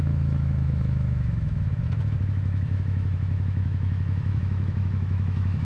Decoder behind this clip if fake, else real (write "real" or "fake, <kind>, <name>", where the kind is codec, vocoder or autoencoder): fake, autoencoder, DAC-VAE